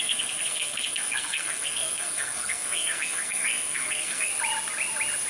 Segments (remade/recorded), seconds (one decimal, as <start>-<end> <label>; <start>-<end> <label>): 0.0-4.3 remade; 4.3-5.3 recorded